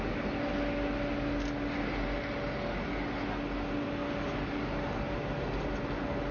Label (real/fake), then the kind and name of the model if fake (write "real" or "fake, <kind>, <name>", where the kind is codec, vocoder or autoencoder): real